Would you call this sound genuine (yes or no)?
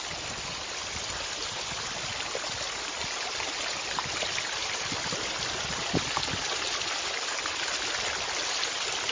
yes